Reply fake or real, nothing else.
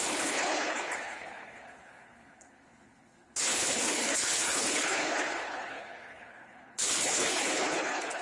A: fake